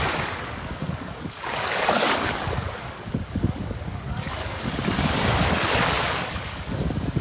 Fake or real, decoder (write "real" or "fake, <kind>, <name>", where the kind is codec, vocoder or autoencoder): fake, codec, DAC